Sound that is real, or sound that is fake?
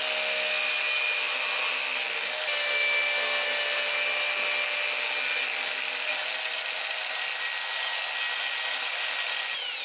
real